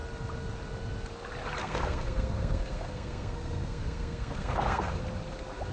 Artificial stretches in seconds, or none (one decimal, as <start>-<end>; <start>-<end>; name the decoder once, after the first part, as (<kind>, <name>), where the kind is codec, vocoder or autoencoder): 1.6-5.0 (codec, SNAC)